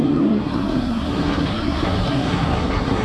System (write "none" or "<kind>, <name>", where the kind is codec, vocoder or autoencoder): codec, SNAC